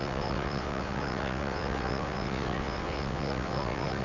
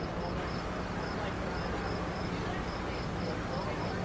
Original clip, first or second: second